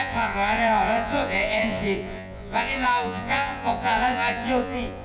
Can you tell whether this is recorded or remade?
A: remade